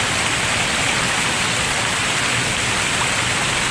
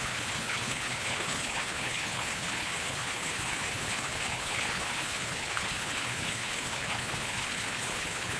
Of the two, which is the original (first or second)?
first